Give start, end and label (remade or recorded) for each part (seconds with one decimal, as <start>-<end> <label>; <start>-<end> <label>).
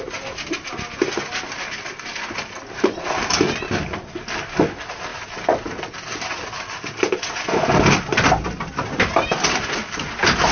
0.0-10.5 recorded